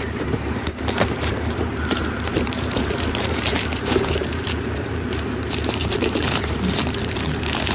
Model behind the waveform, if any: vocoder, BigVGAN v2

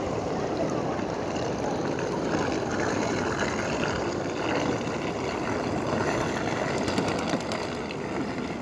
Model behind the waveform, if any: none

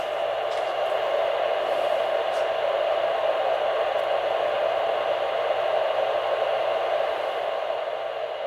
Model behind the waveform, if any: vocoder, BigVGAN v2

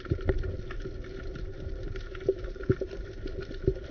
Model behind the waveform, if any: vocoder, BigVGAN v2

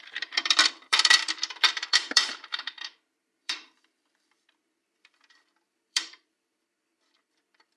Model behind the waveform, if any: vocoder, BigVGAN v2